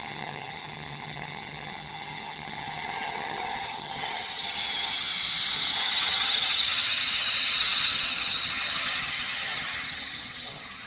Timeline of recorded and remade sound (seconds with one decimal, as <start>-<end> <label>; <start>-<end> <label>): 0.0-5.1 remade; 5.1-5.7 recorded; 5.7-10.9 remade